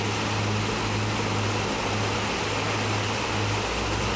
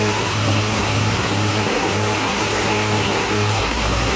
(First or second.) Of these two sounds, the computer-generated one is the second